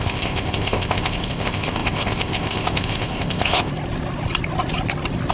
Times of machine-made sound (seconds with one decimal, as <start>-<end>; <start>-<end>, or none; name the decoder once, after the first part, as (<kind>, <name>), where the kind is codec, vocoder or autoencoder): 0.0-3.7 (codec, ZipCodec)